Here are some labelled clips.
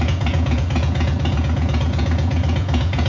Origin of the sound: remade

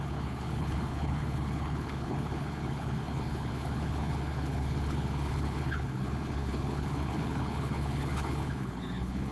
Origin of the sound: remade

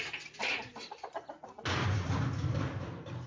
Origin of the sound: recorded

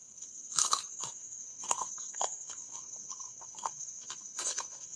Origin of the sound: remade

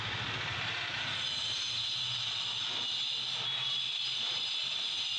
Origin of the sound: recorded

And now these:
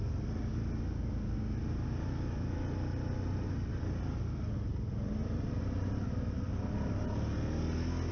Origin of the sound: recorded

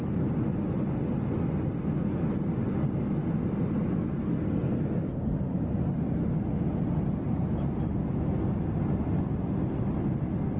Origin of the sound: recorded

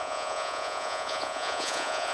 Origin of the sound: remade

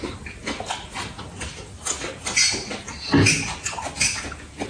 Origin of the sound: recorded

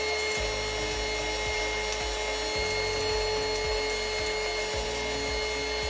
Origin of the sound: recorded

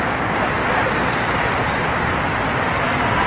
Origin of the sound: recorded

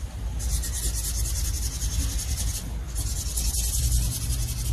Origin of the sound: recorded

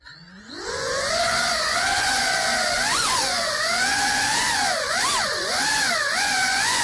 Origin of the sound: remade